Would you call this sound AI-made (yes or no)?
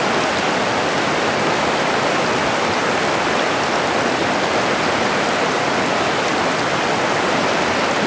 no